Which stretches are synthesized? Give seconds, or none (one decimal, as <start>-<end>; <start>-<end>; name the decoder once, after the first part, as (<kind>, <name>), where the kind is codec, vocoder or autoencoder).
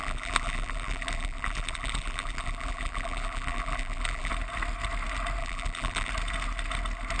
0.0-4.3 (vocoder, BigVGAN v2); 5.4-6.1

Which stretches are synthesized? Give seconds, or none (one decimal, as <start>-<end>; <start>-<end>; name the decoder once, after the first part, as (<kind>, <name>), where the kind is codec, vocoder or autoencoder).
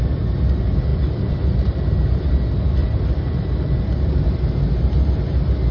0.9-2.0 (vocoder, BigVGAN v2); 2.8-4.4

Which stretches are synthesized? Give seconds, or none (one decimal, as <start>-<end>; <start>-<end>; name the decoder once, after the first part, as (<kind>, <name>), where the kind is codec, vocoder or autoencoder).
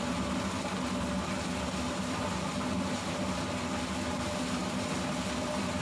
none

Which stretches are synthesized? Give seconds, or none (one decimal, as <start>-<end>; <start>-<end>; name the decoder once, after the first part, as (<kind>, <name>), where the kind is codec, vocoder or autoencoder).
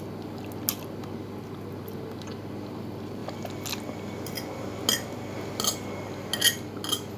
none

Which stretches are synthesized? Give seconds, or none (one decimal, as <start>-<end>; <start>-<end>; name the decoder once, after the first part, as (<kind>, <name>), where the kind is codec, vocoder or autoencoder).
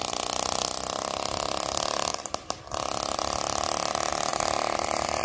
2.1-2.6 (vocoder, BigVGAN v2); 4.3-5.2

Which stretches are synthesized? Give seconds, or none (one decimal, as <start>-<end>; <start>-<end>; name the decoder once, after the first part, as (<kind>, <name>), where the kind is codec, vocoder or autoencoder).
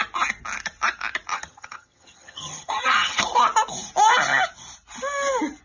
1.3-3.2 (vocoder, HiFi-GAN)